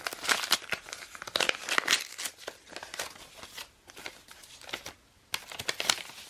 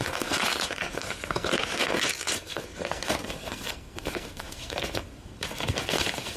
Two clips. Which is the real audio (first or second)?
first